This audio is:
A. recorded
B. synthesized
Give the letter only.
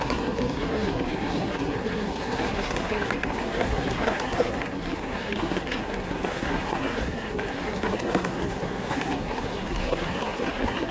B